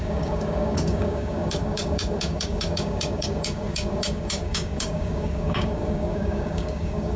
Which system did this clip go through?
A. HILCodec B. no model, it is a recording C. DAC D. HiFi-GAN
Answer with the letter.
C